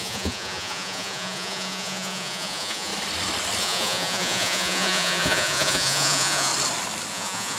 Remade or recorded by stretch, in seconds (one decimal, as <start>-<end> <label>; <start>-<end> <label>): 0.0-2.9 remade; 2.9-3.6 recorded; 3.6-6.5 remade; 6.5-7.1 recorded; 7.1-7.6 remade